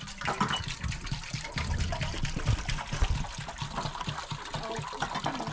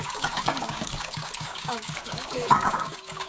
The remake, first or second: second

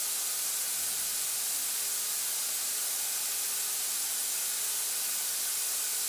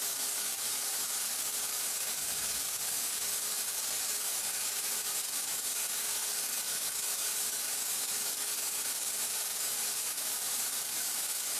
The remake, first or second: second